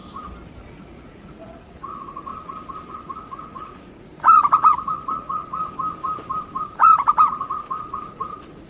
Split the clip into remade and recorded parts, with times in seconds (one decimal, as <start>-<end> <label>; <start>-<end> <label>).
0.0-0.6 recorded; 0.6-2.3 remade; 2.3-2.9 recorded; 2.9-5.6 remade; 5.6-6.6 recorded; 6.6-8.7 remade

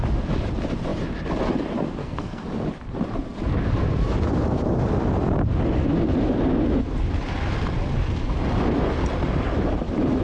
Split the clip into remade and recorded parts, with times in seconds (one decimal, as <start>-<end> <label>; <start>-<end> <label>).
0.0-2.0 recorded; 2.0-2.5 remade; 2.5-10.2 recorded

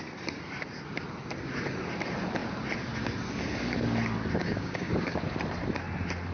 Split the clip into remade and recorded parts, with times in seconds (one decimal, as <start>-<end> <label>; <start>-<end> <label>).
0.0-4.4 recorded; 4.4-5.2 remade; 5.2-6.3 recorded

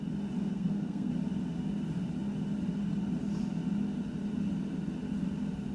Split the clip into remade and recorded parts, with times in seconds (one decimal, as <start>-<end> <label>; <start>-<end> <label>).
0.0-0.5 recorded; 0.5-1.1 remade; 1.1-5.7 recorded

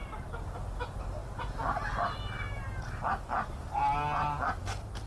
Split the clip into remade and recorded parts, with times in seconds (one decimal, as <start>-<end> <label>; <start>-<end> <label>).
0.0-5.1 recorded